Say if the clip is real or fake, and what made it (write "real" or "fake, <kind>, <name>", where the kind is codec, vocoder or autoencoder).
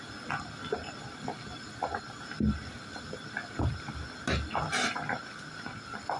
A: real